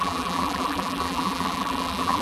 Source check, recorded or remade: remade